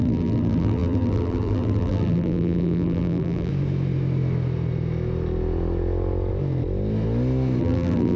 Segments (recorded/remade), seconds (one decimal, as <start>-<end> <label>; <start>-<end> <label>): 0.0-3.5 remade; 3.5-7.6 recorded; 7.6-8.2 remade